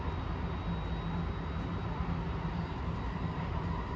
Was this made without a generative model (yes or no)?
yes